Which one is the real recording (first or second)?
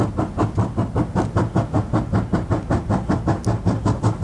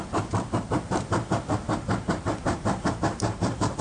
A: first